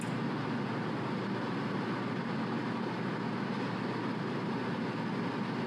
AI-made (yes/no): no